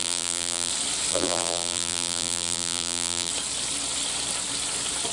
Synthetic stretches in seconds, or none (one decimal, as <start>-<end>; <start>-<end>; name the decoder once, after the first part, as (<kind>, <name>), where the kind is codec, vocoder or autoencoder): 0.0-0.7 (vocoder, BigVGAN v2); 1.1-3.3